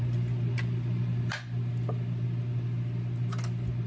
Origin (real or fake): real